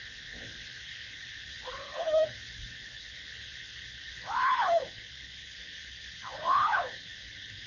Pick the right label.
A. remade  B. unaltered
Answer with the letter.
A